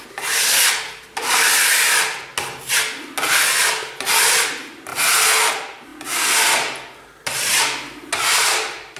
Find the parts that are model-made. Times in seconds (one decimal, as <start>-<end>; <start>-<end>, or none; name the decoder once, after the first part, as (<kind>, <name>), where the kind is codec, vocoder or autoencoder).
none